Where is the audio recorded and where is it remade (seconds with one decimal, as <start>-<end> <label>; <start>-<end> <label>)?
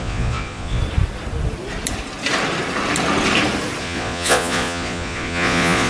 0.0-0.8 remade; 0.8-3.8 recorded; 3.8-5.9 remade